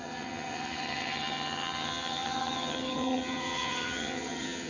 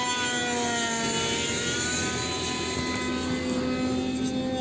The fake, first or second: first